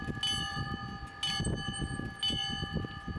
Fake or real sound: real